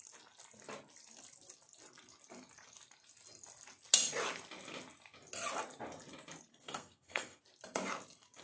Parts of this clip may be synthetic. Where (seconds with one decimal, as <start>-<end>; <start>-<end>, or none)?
6.5-7.4